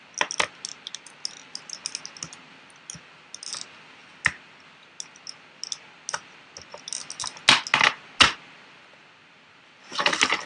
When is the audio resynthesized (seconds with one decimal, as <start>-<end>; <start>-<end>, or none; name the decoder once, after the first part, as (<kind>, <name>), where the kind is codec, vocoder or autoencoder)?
none

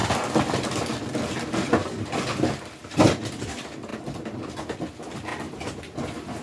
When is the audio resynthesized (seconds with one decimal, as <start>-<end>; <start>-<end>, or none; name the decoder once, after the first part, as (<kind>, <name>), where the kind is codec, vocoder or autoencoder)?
1.8-2.6 (vocoder, BigVGAN v2); 5.3-5.8

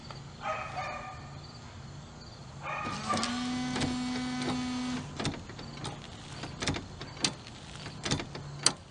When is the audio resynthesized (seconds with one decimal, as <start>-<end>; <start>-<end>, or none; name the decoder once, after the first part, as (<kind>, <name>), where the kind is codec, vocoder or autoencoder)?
none

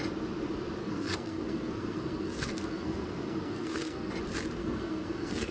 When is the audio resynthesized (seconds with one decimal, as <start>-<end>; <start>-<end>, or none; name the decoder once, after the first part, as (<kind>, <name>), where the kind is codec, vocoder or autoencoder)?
0.8-4.1 (codec, SNAC); 4.6-5.5

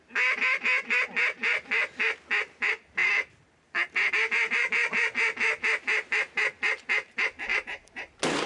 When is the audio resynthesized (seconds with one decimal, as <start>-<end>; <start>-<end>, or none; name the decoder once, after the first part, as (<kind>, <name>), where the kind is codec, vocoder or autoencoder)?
7.5-8.1 (vocoder, BigVGAN v2)

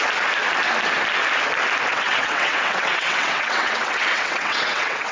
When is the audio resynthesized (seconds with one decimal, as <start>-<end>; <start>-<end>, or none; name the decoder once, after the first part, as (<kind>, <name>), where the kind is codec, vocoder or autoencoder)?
1.9-5.1 (vocoder, WaveNeXt)